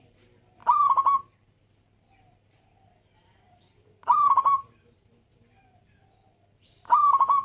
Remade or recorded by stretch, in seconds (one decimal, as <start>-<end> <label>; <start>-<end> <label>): 0.0-3.2 recorded; 3.2-6.0 remade; 6.0-7.4 recorded